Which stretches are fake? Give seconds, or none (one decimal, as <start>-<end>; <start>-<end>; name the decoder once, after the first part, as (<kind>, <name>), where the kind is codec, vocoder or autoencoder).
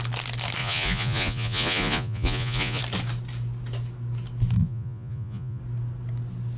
0.6-2.8 (vocoder, Vocos); 4.6-5.6